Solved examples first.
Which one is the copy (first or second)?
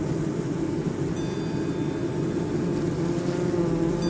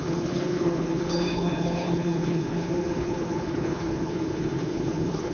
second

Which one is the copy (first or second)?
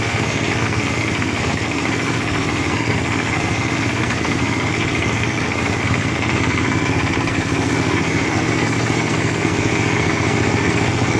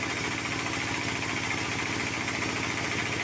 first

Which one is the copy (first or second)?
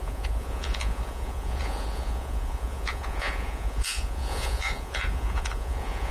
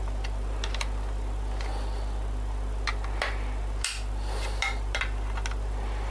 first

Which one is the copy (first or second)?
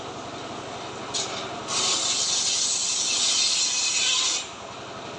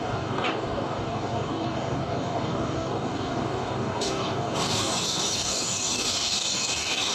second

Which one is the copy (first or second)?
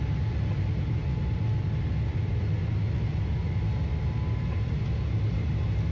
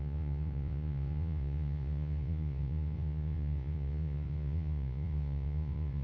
second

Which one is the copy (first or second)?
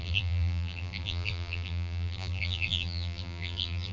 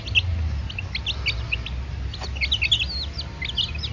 first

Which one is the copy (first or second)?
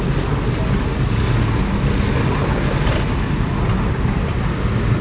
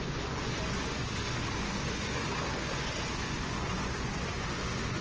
second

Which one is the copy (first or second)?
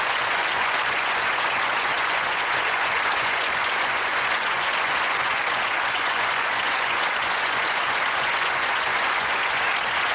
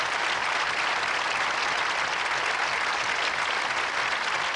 first